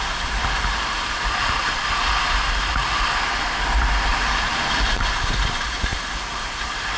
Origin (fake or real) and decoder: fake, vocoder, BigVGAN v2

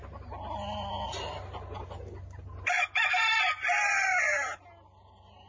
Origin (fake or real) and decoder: real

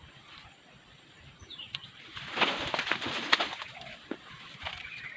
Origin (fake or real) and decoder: real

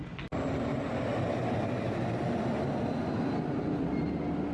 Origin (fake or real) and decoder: real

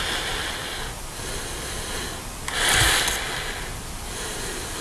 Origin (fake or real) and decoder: fake, vocoder, BigVGAN v2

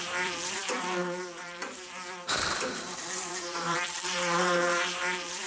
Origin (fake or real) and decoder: fake, vocoder, BigVGAN v2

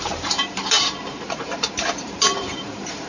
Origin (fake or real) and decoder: fake, vocoder, BigVGAN v2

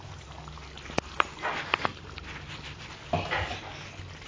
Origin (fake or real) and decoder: real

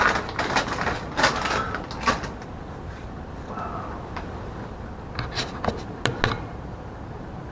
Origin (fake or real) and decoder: real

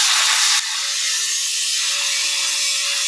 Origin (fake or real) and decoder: real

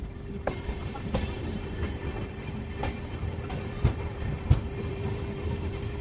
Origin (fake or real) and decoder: fake, vocoder, BigVGAN v2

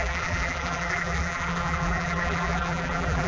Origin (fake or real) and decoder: fake, vocoder, BigVGAN v2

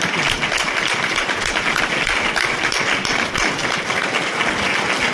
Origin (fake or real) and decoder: real